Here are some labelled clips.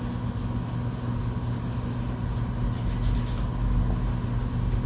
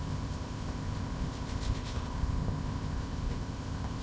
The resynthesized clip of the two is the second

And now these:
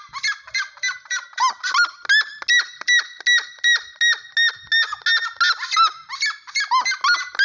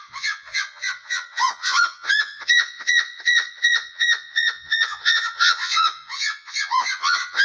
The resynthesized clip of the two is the second